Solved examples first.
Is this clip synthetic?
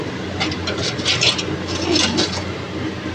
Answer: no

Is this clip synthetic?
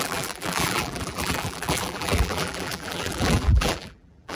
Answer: yes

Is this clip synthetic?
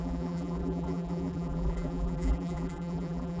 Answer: yes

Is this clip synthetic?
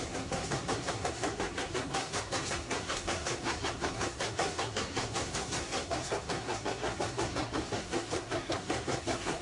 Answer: yes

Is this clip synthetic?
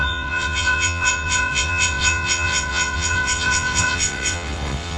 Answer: yes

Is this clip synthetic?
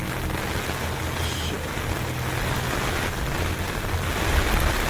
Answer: no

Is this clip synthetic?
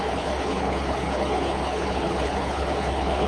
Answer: yes